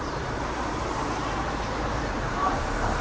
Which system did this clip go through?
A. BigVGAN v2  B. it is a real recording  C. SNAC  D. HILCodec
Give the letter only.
A